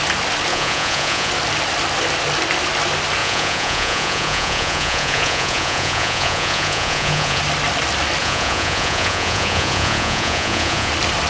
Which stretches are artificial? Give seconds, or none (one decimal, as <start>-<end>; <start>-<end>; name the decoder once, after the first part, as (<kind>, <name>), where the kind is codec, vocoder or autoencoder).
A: 0.5-1.3 (vocoder, Vocos); 3.2-7.4; 8.2-10.9